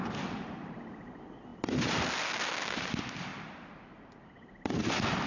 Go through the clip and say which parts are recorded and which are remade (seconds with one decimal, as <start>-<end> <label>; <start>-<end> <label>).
0.0-5.3 recorded